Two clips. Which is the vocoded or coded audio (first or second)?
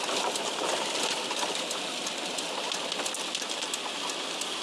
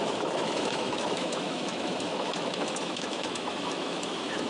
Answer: second